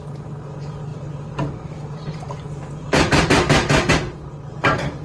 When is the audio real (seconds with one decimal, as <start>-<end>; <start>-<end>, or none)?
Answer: 0.0-0.9; 3.9-5.0